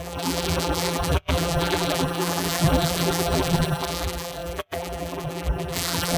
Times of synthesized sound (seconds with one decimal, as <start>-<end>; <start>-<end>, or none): 0.0-6.2